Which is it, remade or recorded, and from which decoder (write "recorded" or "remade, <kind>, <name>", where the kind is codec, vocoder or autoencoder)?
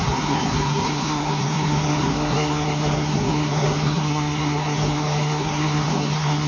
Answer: remade, codec, SNAC